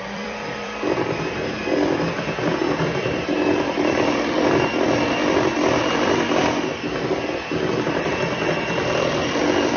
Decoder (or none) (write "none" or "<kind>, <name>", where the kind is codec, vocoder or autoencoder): vocoder, BigVGAN v2